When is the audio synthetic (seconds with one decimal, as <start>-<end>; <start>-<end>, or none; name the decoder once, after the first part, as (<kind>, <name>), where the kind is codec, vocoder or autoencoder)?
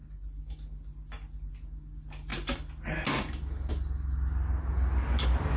none